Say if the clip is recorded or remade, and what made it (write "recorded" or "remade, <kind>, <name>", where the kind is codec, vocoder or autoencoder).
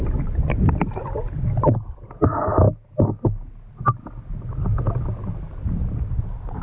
recorded